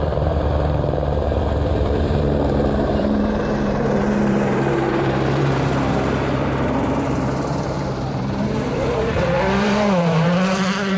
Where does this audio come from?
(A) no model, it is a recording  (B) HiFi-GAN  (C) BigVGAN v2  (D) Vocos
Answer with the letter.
C